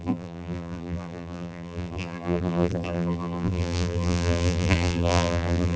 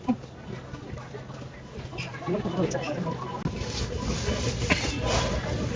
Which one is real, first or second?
second